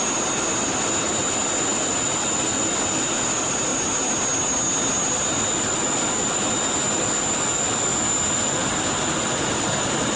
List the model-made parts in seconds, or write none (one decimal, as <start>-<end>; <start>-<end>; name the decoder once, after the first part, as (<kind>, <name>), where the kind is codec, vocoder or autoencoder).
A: none